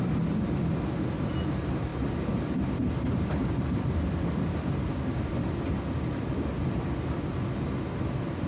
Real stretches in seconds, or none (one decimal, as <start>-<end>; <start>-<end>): 0.0-8.5